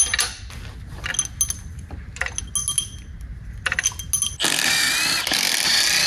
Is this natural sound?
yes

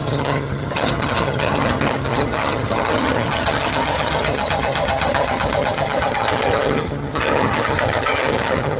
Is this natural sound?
no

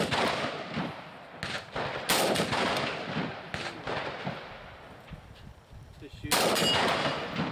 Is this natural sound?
yes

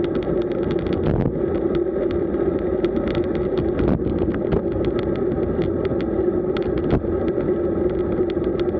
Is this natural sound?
yes